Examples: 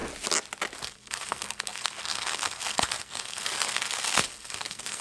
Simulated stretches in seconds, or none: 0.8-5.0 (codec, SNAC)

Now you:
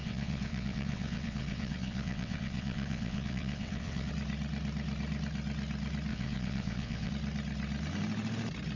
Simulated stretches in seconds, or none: 0.0-4.1 (vocoder, WaveNeXt); 6.1-7.1

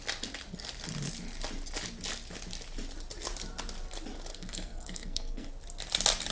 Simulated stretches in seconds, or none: 4.3-5.5 (codec, SNAC)